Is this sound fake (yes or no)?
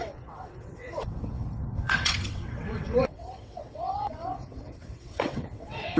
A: yes